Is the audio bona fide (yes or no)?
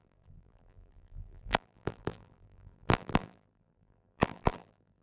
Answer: no